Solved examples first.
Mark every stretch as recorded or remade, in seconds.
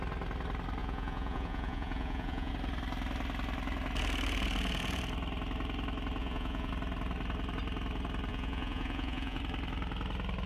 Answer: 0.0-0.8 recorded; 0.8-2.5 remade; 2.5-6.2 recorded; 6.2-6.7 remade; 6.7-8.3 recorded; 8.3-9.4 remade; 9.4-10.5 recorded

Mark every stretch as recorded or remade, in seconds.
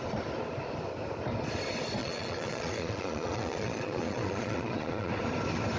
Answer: 0.0-2.0 recorded; 2.0-5.1 remade; 5.1-5.8 recorded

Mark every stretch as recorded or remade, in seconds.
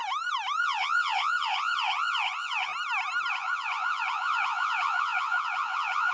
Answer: 0.0-0.6 recorded; 0.6-2.7 remade; 2.7-3.3 recorded; 3.3-6.1 remade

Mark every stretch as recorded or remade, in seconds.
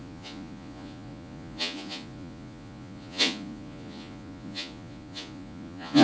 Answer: 0.0-6.0 remade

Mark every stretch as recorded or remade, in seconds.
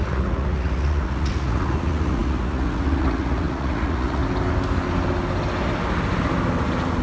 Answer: 0.0-4.2 remade; 4.2-7.0 recorded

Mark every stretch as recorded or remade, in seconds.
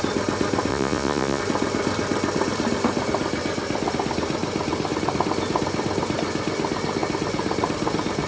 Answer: 0.0-0.7 recorded; 0.7-1.4 remade; 1.4-8.3 recorded